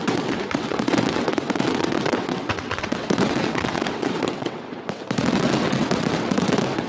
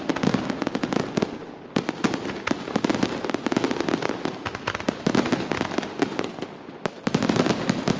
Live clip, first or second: second